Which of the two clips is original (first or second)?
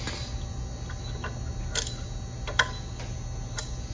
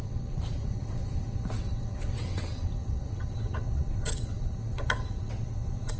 first